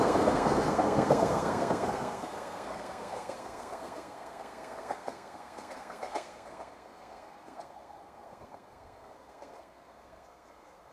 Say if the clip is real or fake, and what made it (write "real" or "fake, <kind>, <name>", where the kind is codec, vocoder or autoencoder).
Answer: fake, codec, SNAC